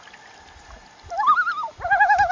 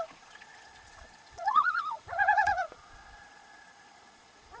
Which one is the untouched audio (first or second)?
first